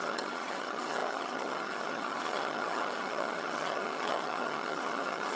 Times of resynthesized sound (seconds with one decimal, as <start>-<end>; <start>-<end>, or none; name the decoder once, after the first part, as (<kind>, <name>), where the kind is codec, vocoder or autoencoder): 0.0-5.4 (vocoder, HiFi-GAN)